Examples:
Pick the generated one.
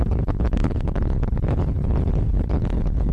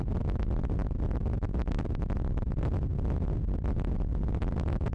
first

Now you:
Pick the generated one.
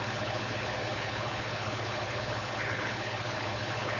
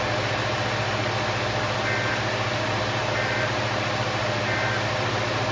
first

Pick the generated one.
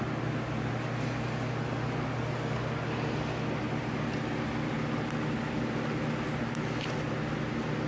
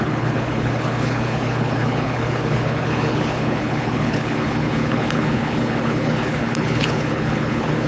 second